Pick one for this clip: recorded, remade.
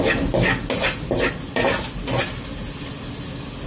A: recorded